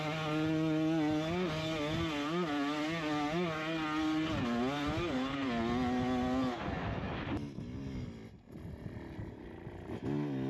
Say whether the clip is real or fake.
real